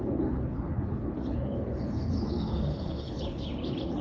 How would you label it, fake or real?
fake